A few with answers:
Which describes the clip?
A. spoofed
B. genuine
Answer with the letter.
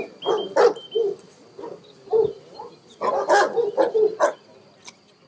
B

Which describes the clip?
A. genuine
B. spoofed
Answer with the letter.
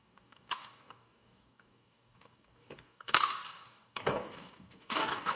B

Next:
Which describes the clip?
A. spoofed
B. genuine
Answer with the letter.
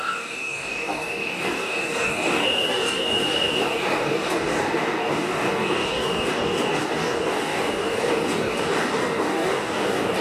A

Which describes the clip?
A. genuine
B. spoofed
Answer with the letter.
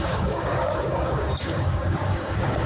B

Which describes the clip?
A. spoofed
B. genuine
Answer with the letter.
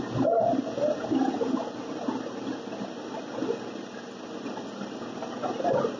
B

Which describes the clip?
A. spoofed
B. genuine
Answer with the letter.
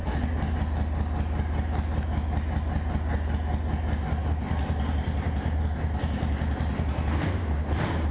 B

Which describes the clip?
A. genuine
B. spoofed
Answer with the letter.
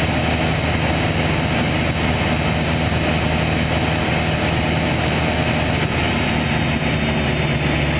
A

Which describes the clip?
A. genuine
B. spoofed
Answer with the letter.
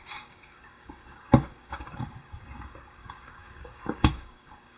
B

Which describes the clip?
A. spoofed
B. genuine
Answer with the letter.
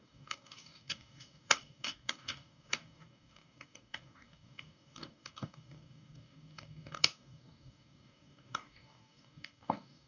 A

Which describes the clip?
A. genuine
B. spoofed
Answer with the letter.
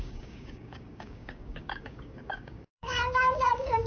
B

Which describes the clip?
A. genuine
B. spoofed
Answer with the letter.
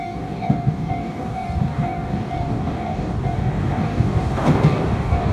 B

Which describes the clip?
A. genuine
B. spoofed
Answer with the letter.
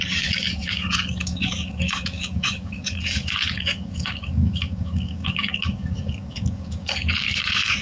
B